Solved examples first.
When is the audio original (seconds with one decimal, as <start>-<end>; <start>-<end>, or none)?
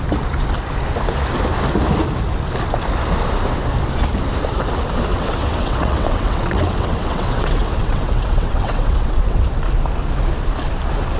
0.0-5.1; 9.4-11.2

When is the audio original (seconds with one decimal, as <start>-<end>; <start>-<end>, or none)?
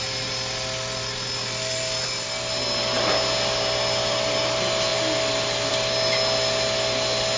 0.0-7.4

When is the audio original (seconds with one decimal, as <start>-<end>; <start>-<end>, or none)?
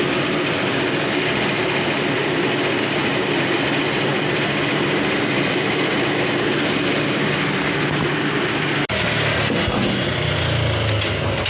0.0-11.5